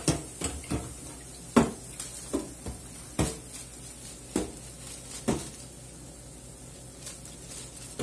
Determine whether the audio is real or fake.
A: real